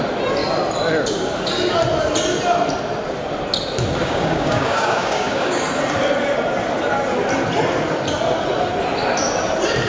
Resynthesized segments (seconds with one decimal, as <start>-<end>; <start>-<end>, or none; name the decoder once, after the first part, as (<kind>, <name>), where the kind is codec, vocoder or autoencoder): 4.0-5.6 (codec, DAC)